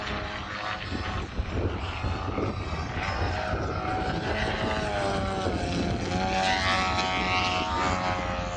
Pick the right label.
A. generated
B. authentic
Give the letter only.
B